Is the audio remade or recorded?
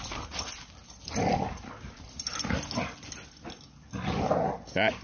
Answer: recorded